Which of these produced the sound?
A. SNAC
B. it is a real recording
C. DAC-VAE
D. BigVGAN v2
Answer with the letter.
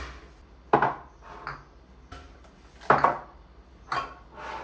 B